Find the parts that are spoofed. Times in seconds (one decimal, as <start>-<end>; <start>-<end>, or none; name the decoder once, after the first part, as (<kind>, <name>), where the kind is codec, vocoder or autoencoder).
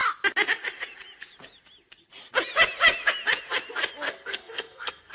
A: 4.1-5.1 (codec, SNAC)